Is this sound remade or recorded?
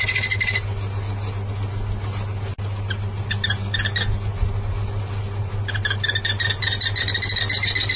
recorded